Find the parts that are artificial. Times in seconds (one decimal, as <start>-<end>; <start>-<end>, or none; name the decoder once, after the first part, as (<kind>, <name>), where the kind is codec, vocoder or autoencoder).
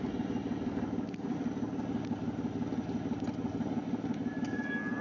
none